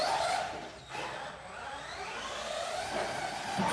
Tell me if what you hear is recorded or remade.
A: recorded